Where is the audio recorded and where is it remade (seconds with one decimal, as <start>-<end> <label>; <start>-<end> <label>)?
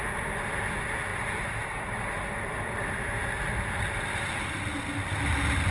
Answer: 0.0-1.1 recorded; 1.1-3.1 remade; 3.1-5.7 recorded